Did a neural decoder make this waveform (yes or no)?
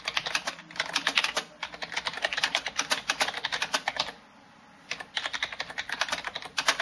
yes